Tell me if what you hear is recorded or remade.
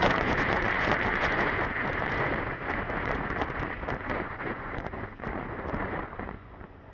remade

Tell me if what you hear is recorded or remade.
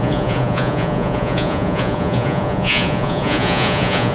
remade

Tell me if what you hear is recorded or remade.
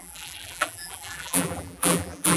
remade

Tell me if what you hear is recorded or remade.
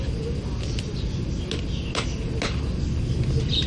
recorded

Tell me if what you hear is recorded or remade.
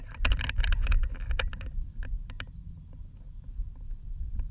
recorded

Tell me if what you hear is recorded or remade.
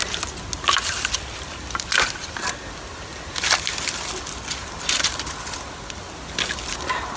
recorded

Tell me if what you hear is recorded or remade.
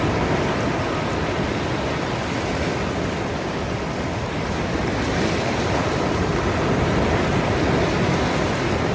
recorded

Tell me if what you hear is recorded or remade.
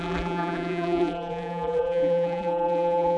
remade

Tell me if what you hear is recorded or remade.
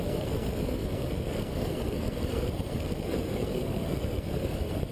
remade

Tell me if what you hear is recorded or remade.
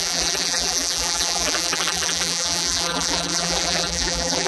remade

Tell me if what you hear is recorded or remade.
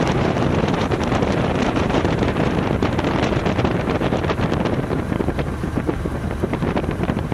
remade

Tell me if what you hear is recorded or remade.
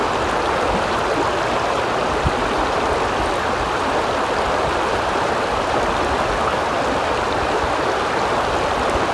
recorded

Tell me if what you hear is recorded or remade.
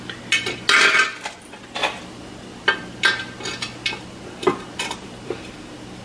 recorded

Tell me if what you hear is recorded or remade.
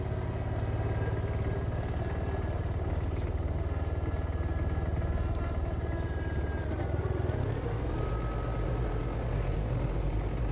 recorded